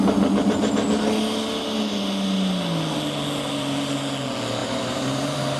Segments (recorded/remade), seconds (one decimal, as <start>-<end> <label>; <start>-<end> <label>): 0.0-4.6 recorded; 4.6-5.6 remade